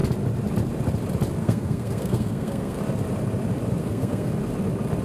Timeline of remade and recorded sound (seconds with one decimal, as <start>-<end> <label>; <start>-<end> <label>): 0.0-1.4 recorded; 1.4-2.8 remade; 2.8-3.8 recorded; 3.8-4.3 remade; 4.3-5.0 recorded

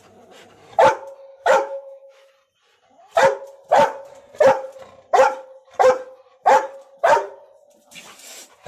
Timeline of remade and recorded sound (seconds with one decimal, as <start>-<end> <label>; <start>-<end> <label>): 0.0-1.3 recorded; 1.3-2.3 remade; 2.3-8.7 recorded

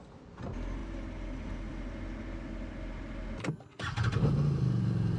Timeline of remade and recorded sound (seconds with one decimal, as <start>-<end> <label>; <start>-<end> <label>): 0.0-5.2 recorded

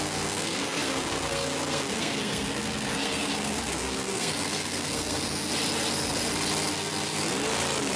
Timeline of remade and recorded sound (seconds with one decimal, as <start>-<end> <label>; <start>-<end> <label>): 0.0-5.5 remade; 5.5-6.7 recorded; 6.7-7.2 remade; 7.2-8.0 recorded